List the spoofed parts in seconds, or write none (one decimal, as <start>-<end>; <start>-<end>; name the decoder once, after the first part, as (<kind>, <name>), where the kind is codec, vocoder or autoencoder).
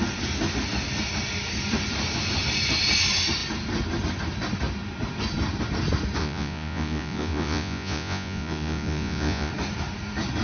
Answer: 6.2-9.5 (vocoder, Vocos)